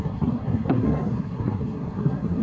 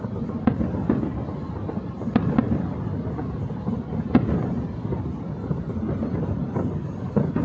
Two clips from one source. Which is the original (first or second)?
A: second